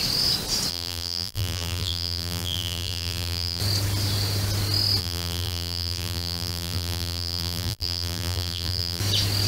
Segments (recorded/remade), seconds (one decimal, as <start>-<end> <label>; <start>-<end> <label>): 0.0-0.7 recorded; 0.7-3.6 remade; 3.6-5.0 recorded; 5.0-9.0 remade; 9.0-9.5 recorded